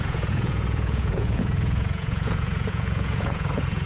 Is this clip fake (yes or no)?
yes